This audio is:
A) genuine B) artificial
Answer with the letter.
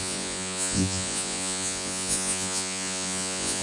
B